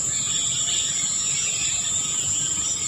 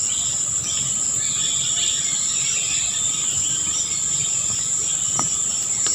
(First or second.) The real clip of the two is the second